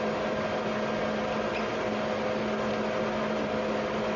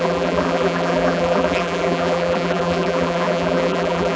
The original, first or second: first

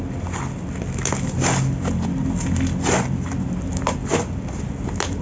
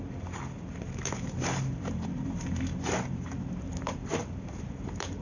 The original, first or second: first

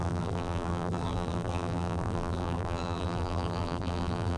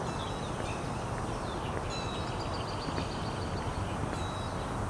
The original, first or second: second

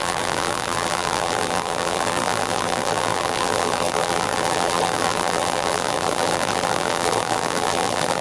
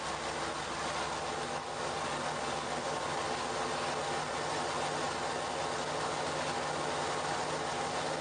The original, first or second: second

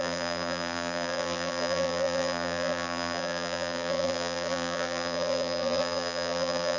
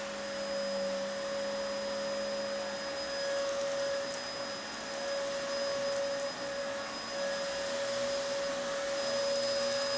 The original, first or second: second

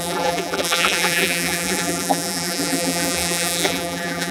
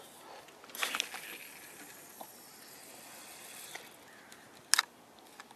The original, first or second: second